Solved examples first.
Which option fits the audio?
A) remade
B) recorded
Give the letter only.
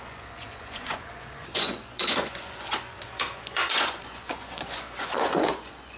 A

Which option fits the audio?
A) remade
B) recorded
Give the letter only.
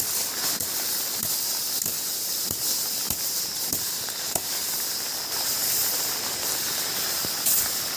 B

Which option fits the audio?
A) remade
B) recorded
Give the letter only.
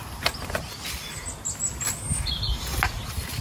B